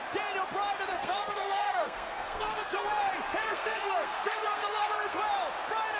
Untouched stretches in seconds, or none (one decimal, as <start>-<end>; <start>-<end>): 0.0-0.9; 3.0-3.4; 5.2-6.0